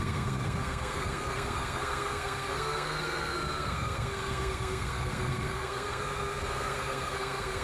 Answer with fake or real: fake